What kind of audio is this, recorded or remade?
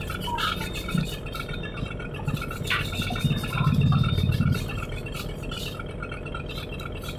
recorded